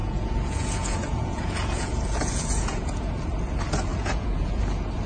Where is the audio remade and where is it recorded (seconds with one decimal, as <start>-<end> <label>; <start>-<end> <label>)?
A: 0.0-3.1 remade; 3.1-3.9 recorded; 3.9-4.6 remade; 4.6-5.1 recorded